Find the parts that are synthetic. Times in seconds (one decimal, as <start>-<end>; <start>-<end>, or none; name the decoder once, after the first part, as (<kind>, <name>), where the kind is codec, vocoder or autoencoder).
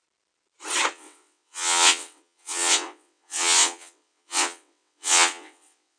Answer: 0.9-6.0 (vocoder, WaveNeXt)